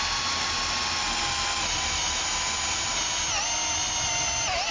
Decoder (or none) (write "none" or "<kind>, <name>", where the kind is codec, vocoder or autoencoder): none